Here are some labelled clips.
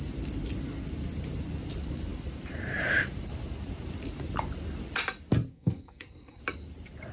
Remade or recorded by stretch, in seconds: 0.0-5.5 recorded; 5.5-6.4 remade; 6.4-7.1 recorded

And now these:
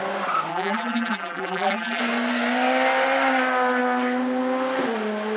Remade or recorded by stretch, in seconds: 0.0-0.5 recorded; 0.5-2.0 remade; 2.0-5.4 recorded

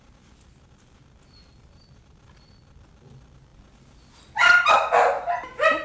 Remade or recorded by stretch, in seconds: 0.0-5.8 recorded

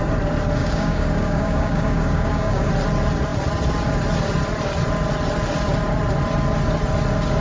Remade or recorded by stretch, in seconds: 0.0-0.6 recorded; 0.6-2.7 remade; 2.7-7.4 recorded

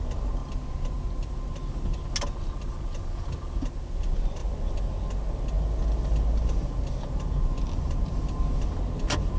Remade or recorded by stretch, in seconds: 0.0-9.4 recorded

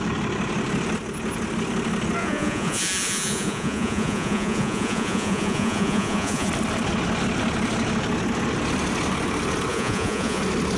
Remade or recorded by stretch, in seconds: 0.0-2.2 recorded; 2.2-6.5 remade; 6.5-9.7 recorded; 9.7-10.4 remade; 10.4-10.8 recorded

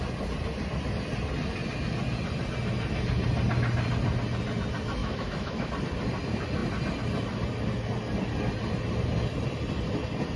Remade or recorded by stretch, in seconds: 0.0-5.0 recorded; 5.0-5.7 remade; 5.7-10.4 recorded

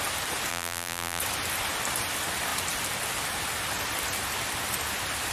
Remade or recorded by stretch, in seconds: 0.0-0.5 recorded; 0.5-1.2 remade; 1.2-5.3 recorded